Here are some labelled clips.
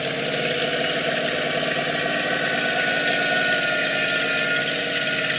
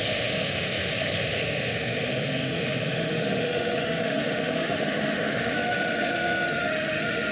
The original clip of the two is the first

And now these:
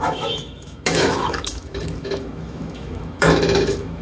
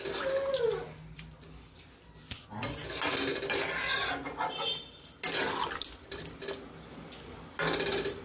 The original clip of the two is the second